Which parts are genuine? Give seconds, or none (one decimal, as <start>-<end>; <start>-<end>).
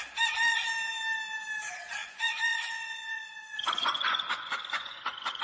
0.0-2.0